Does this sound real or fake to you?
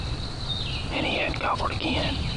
real